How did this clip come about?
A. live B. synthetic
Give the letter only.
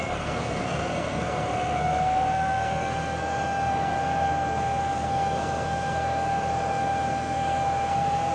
B